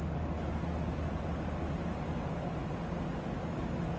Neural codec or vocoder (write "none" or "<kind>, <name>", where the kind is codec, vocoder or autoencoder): none